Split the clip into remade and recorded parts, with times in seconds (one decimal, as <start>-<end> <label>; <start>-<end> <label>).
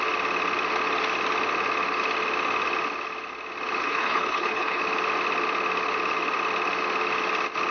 0.0-3.8 recorded; 3.8-4.8 remade; 4.8-7.7 recorded